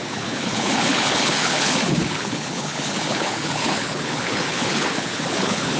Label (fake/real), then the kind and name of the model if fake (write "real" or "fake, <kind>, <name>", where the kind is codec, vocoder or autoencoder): fake, codec, HILCodec